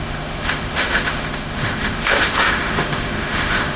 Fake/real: fake